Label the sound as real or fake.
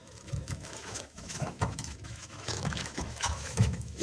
fake